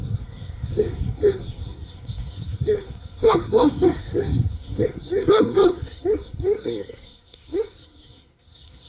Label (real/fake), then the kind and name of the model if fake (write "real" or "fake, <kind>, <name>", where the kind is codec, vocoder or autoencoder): fake, codec, SNAC